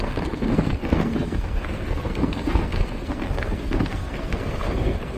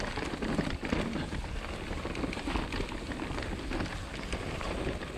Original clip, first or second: second